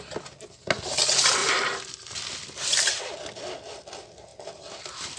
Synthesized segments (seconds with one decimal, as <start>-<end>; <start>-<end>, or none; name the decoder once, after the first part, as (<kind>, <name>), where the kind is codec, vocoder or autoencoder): 1.4-3.0 (vocoder, BigVGAN v2); 4.3-5.2